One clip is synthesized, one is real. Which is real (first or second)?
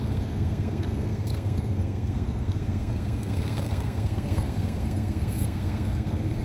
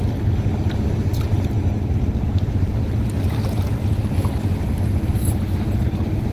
second